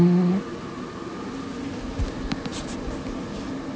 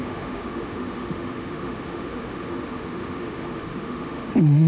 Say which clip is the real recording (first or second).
first